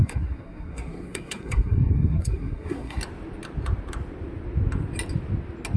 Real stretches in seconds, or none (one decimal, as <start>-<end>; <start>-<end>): 3.0-5.8